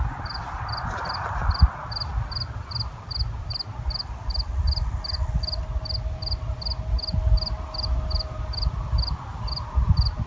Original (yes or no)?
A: yes